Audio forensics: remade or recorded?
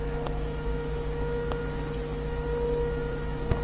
recorded